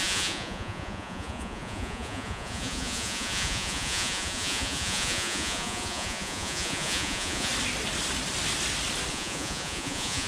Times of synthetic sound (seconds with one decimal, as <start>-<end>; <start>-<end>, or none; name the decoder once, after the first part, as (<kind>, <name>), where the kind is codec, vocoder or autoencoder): 0.0-7.5 (vocoder, Vocos); 9.1-10.3